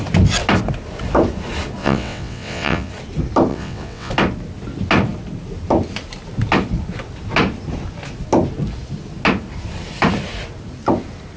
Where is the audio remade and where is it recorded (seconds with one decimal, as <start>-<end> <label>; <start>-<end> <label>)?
0.0-1.8 recorded; 1.8-2.9 remade; 2.9-3.5 recorded; 3.5-4.1 remade; 4.1-11.4 recorded